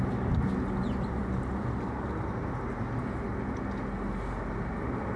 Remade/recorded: recorded